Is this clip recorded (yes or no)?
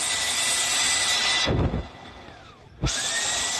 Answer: yes